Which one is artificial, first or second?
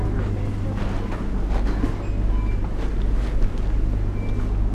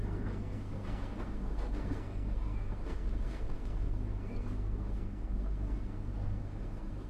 second